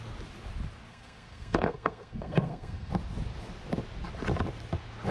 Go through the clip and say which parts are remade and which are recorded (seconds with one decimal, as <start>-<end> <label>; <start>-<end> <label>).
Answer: 0.0-0.9 recorded; 0.9-2.9 remade; 2.9-5.1 recorded